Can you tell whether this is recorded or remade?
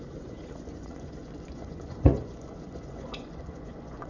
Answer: remade